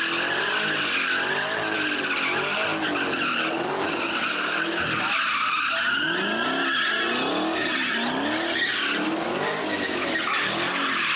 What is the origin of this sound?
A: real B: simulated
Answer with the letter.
A